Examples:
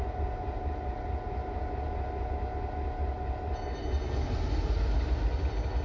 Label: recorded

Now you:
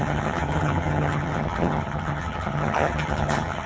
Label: remade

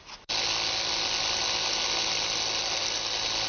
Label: recorded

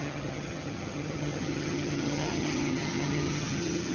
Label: remade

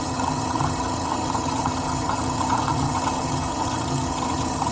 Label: remade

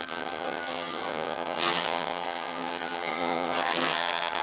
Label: remade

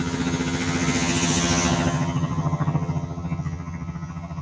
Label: remade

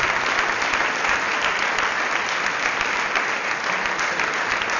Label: recorded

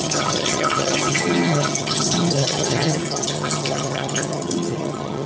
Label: remade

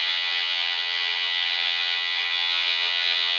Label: remade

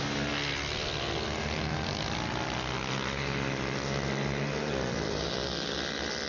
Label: recorded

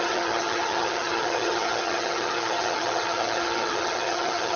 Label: remade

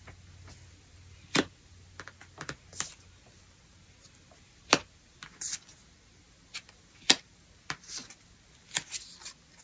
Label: recorded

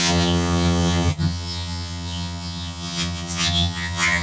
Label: remade